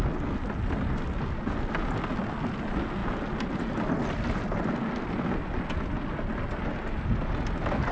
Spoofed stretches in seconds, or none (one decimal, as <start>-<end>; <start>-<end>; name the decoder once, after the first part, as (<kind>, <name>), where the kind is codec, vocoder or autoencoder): none